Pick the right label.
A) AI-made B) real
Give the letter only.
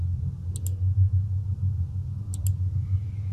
B